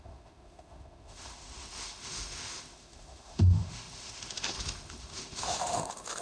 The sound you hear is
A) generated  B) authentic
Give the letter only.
A